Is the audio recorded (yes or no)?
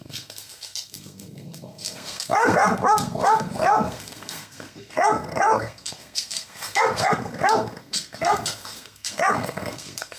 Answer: no